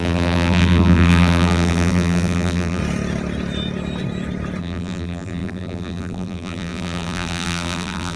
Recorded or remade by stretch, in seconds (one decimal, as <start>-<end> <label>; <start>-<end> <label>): 0.0-2.8 remade; 2.8-4.6 recorded; 4.6-8.2 remade